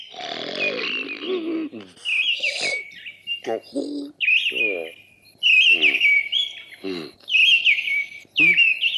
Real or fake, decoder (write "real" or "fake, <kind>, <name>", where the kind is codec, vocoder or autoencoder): real